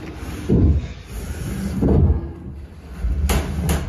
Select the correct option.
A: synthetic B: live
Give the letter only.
B